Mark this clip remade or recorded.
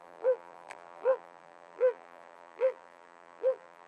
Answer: remade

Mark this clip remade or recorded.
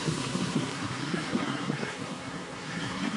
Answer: remade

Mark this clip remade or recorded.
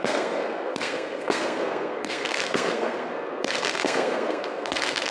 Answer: remade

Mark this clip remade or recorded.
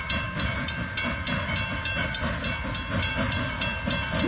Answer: remade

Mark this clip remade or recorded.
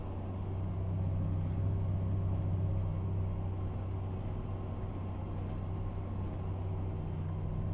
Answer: recorded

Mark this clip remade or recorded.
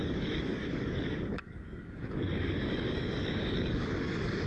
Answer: remade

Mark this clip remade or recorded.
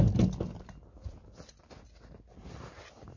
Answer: recorded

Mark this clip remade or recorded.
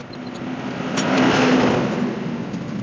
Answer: recorded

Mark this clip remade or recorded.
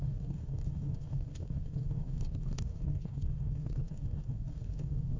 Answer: remade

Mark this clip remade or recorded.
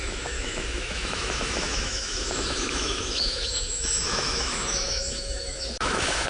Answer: remade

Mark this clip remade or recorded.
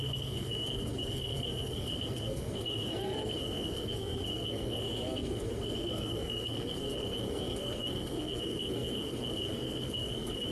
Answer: remade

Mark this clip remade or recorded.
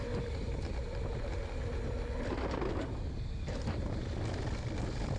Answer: recorded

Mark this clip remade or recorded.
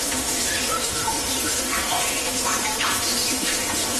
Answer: remade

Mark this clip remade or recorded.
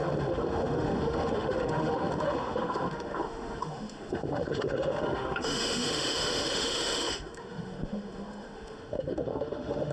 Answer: remade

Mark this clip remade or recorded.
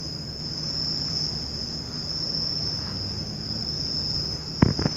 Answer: recorded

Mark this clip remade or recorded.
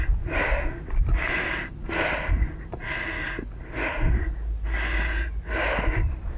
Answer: recorded